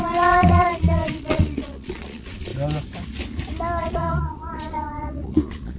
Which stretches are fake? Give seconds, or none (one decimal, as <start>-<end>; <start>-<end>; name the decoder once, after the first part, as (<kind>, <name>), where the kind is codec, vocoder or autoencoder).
0.0-2.5 (vocoder, Vocos); 3.8-5.8